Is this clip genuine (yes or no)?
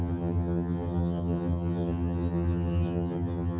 no